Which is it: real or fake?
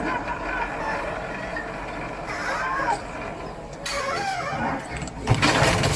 real